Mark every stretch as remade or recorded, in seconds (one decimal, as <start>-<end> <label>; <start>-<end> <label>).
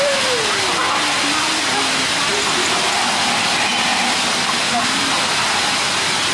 0.0-6.3 recorded